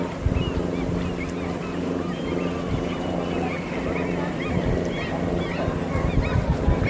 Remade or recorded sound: recorded